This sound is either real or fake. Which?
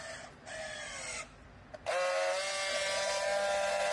real